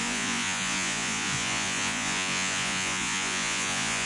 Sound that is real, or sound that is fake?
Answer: fake